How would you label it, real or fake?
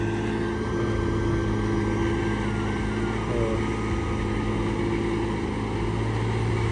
real